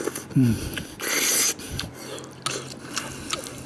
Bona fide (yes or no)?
yes